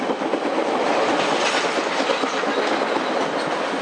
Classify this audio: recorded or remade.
recorded